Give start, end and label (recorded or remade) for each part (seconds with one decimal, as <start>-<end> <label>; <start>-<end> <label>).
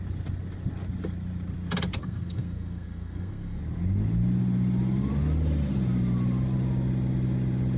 0.0-2.0 recorded; 2.0-3.6 remade; 3.6-7.8 recorded